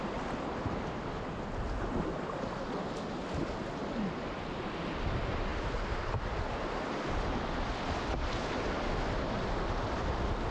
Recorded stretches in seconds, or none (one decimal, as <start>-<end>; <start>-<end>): 0.0-10.5